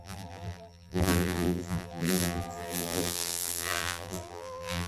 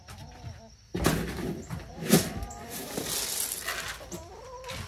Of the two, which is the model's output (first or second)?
first